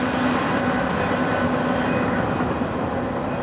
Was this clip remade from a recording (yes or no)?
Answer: no